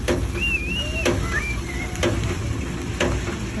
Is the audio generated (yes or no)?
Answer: no